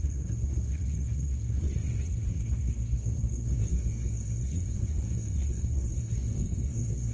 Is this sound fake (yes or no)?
yes